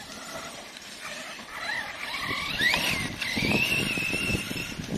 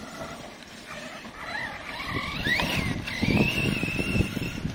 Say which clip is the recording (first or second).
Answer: second